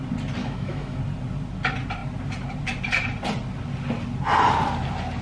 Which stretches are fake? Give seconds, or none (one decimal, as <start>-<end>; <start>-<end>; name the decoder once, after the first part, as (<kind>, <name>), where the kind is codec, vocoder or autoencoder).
0.4-1.0 (autoencoder, DAC-VAE)